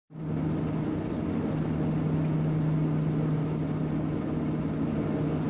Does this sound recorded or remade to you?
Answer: recorded